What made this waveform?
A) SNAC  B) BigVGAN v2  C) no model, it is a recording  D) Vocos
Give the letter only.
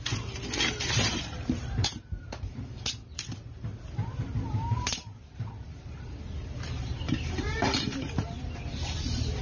B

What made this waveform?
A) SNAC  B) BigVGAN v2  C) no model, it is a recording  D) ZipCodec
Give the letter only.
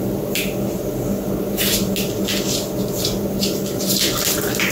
C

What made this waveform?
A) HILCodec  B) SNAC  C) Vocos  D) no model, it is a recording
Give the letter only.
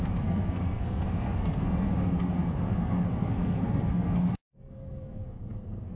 B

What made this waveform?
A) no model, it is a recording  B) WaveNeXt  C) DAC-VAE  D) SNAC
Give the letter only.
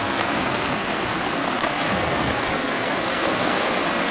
D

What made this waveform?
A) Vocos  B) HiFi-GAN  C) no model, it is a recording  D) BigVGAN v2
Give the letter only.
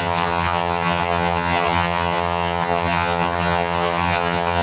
B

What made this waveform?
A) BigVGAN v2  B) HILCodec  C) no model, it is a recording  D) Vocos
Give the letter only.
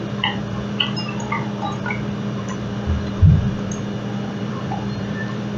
A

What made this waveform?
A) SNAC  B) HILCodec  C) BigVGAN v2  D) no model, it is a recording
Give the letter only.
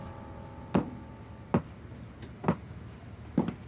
D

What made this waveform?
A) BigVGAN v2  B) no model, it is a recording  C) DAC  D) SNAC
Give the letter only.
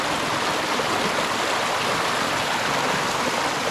B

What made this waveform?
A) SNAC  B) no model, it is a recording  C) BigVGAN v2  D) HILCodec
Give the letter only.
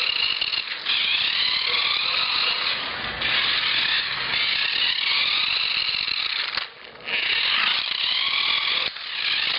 B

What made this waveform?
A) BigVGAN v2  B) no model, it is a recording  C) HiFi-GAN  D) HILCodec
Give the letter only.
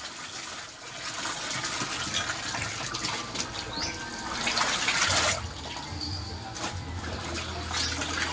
B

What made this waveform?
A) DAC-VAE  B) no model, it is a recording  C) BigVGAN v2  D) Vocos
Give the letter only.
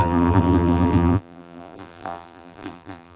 C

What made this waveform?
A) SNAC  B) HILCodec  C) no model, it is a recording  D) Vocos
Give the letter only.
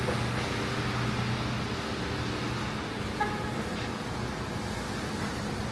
C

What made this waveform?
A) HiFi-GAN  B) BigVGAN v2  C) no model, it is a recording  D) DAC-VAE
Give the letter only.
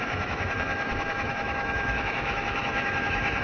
D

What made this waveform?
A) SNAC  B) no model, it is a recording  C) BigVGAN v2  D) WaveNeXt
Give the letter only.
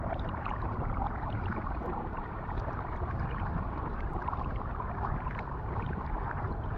C